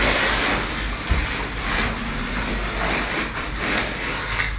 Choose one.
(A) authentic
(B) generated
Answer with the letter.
A